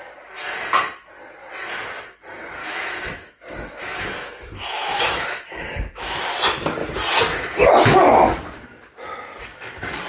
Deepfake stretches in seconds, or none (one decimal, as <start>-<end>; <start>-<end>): 2.6-6.2